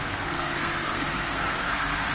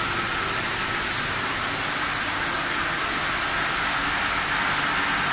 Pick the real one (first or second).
second